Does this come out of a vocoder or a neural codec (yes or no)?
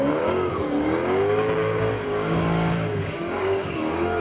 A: yes